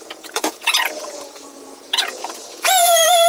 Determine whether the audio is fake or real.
fake